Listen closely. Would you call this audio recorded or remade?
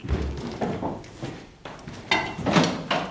recorded